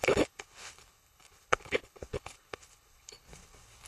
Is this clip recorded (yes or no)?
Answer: no